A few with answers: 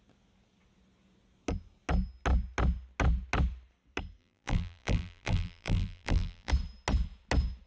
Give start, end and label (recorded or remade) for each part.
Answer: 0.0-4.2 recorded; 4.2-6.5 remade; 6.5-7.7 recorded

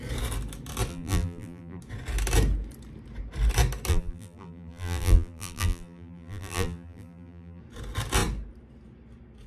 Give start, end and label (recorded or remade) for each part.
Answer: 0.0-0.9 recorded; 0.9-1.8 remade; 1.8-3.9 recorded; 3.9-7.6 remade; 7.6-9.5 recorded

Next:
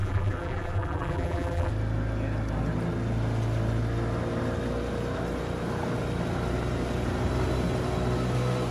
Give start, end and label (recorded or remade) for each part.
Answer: 0.0-1.7 remade; 1.7-8.7 recorded

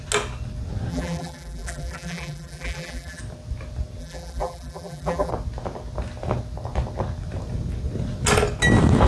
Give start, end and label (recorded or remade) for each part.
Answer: 0.0-0.9 recorded; 0.9-3.2 remade; 3.2-4.0 recorded; 4.0-5.3 remade; 5.3-9.1 recorded

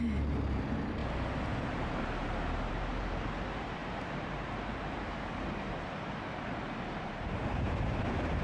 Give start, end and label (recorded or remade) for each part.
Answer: 0.0-1.0 remade; 1.0-2.7 recorded; 2.7-8.4 remade

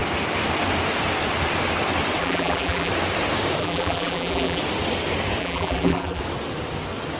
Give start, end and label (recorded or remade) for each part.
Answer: 0.0-2.2 recorded; 2.2-2.9 remade; 2.9-3.6 recorded; 3.6-4.6 remade; 4.6-5.4 recorded; 5.4-6.2 remade; 6.2-7.2 recorded

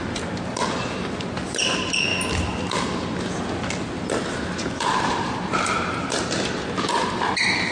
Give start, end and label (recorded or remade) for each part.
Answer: 0.0-2.1 remade; 2.1-4.8 recorded; 4.8-7.7 remade